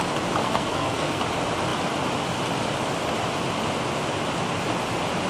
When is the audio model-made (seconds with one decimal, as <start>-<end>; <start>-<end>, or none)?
0.4-1.2